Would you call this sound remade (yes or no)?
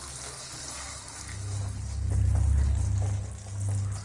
no